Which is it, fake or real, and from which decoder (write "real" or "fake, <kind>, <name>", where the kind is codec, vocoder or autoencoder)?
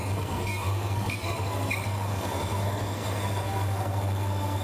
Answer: fake, codec, SNAC